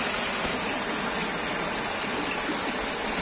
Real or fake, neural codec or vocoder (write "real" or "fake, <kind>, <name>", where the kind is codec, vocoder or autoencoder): real